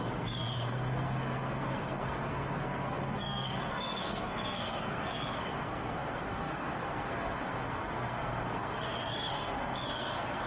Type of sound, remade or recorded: remade